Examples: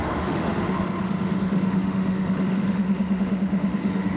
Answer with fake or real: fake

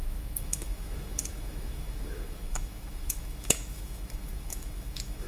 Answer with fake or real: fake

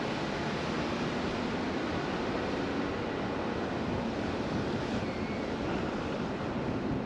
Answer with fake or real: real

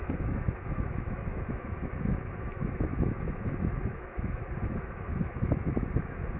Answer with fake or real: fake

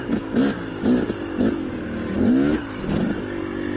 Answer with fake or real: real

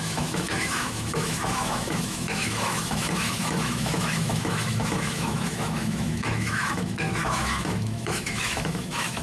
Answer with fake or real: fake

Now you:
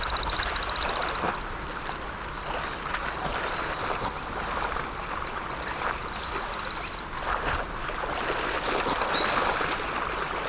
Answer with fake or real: real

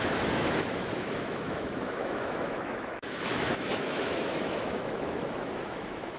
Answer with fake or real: fake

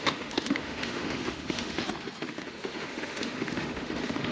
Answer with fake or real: fake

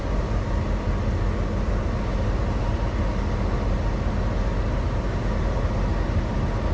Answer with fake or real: real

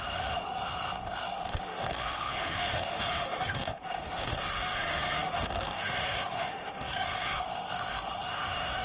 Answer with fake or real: fake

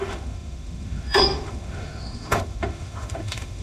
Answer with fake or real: fake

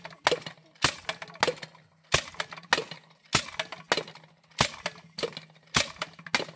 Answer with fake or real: real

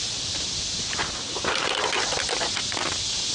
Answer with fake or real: real